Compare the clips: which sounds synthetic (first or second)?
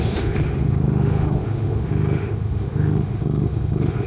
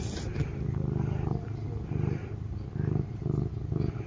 first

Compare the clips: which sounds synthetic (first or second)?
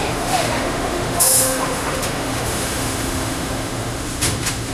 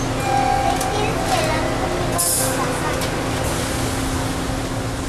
first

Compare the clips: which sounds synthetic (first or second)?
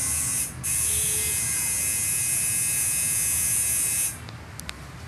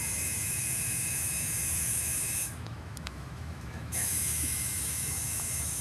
second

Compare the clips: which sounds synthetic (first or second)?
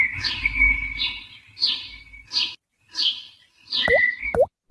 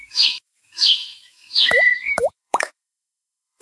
second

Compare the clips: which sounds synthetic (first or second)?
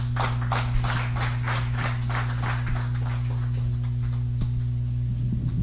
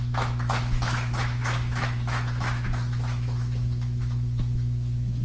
second